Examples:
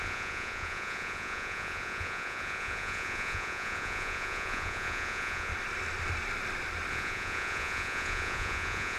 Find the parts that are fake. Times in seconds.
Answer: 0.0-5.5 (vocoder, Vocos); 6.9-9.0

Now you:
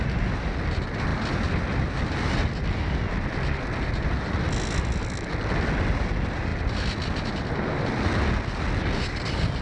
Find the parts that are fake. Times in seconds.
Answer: none